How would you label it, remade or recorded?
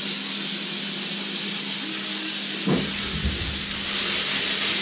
recorded